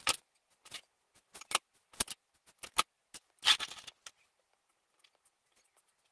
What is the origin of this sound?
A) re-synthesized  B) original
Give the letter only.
B